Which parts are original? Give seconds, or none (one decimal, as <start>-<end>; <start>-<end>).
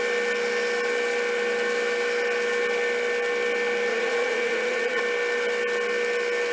0.0-3.9; 5.0-6.5